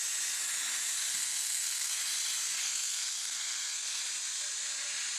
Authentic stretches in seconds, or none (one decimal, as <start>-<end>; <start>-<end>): 0.0-1.1; 2.0-2.6; 4.0-5.2